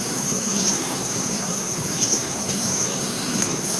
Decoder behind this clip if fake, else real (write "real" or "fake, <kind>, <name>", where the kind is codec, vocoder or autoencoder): fake, codec, SNAC